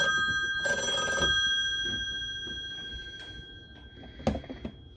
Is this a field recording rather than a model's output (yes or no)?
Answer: yes